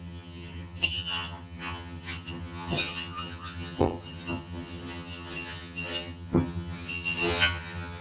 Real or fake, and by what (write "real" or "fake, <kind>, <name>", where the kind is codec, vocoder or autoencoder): fake, vocoder, HiFi-GAN